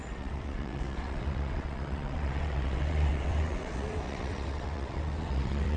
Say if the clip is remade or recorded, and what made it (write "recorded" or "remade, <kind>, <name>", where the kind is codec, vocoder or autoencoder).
remade, vocoder, WaveNeXt